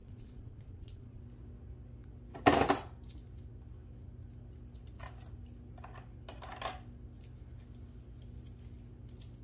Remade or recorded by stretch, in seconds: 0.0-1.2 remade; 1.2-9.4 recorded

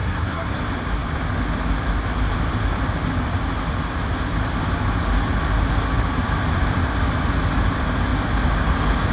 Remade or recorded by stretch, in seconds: 0.0-0.6 remade; 0.6-9.1 recorded

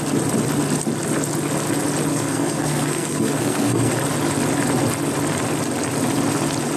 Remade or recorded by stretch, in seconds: 0.0-2.1 recorded; 2.1-3.9 remade; 3.9-6.8 recorded

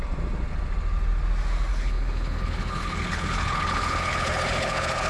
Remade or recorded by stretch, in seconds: 0.0-1.7 recorded; 1.7-5.1 remade